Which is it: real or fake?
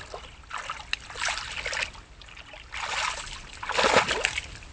real